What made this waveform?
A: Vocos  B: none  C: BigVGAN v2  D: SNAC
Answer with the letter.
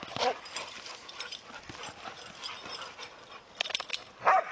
B